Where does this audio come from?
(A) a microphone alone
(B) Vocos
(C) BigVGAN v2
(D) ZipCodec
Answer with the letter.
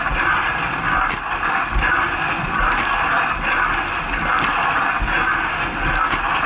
A